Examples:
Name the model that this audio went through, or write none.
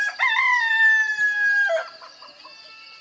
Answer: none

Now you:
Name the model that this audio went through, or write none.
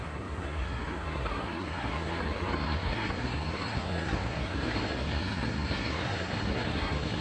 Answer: codec, SNAC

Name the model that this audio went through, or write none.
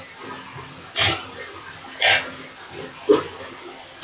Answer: none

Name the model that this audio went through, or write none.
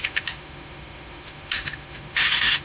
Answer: autoencoder, DAC-VAE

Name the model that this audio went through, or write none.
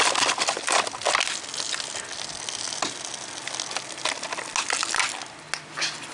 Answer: none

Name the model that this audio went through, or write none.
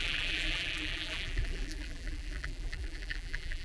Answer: vocoder, BigVGAN v2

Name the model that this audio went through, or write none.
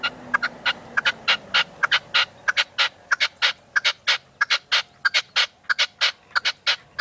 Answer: none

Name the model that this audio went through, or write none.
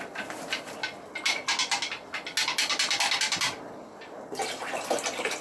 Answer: none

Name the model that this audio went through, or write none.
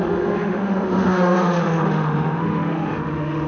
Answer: autoencoder, DAC-VAE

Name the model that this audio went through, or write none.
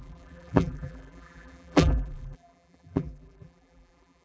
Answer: vocoder, BigVGAN v2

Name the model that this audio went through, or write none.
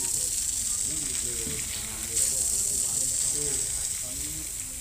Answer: none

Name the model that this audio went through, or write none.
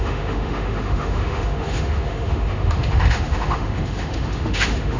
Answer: autoencoder, DAC-VAE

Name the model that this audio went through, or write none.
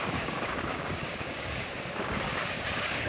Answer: codec, DAC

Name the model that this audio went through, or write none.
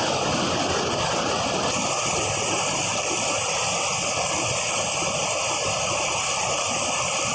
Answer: none